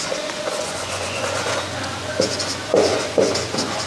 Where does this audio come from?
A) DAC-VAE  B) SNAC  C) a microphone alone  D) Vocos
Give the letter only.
D